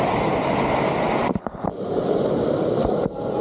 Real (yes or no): no